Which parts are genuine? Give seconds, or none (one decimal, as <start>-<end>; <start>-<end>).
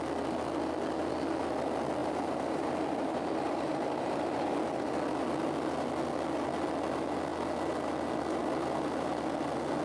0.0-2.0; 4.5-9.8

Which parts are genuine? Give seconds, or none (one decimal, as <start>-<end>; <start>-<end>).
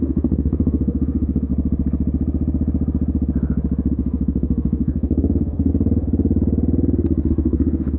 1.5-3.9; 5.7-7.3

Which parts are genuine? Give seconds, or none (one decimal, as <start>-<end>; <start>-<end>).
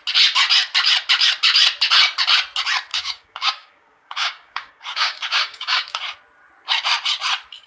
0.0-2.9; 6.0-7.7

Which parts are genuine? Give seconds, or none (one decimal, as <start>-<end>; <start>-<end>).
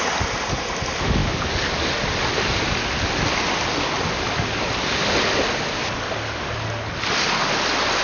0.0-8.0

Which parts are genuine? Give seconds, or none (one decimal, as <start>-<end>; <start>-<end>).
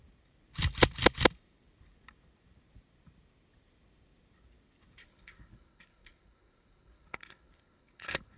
0.0-5.0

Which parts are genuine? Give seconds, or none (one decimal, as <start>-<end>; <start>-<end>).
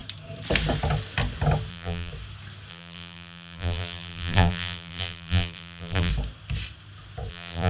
0.0-1.7; 2.1-2.7; 6.1-7.3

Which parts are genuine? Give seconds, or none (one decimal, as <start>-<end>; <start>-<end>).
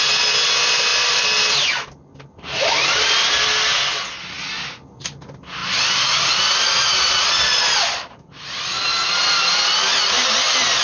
0.0-10.8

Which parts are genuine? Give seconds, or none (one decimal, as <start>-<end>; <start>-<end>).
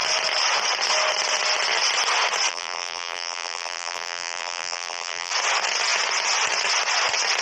0.0-2.5; 5.3-7.4